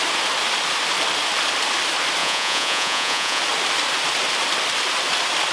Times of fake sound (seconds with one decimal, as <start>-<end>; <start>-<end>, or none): 2.2-3.4